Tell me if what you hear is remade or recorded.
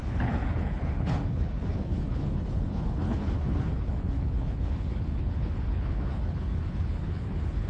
remade